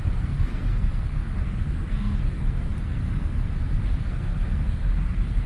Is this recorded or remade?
remade